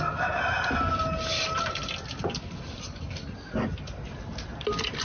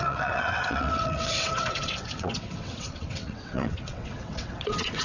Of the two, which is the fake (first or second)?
second